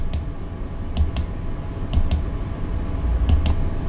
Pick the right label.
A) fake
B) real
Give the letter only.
B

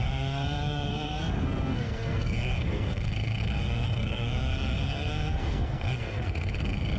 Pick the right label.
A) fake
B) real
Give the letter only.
A